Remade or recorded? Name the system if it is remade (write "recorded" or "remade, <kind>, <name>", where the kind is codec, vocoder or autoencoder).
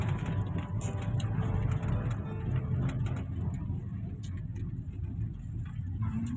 recorded